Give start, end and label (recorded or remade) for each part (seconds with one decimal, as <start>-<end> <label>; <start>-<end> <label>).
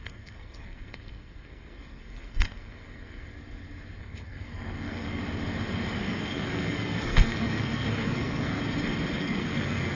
0.0-3.3 remade; 3.3-4.0 recorded; 4.0-5.2 remade; 5.2-6.0 recorded; 6.0-8.6 remade; 8.6-9.2 recorded; 9.2-9.9 remade